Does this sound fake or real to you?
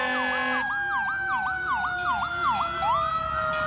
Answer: real